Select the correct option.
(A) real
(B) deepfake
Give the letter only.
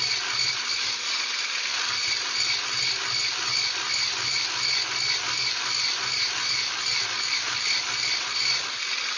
A